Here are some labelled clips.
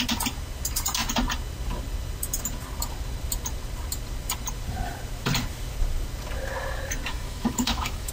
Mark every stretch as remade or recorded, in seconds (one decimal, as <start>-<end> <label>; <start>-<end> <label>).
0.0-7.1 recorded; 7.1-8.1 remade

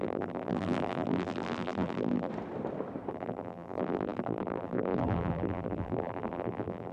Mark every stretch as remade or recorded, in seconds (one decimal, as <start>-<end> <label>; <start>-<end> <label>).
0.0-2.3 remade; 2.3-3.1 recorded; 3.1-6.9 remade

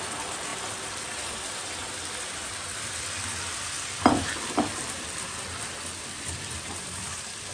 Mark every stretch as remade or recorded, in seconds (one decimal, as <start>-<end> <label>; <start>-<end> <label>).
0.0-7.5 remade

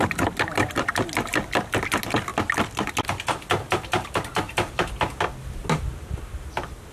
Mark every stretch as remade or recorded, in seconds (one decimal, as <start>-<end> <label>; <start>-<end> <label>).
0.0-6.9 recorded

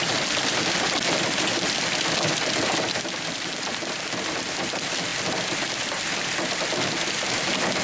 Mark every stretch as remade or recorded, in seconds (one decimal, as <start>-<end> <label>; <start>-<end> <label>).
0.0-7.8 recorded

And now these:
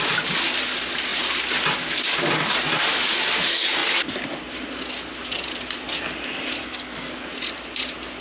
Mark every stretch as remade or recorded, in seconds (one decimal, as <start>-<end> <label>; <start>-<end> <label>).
0.0-6.6 recorded; 6.6-7.1 remade; 7.1-8.2 recorded